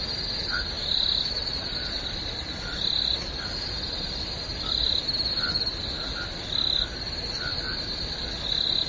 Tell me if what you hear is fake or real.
real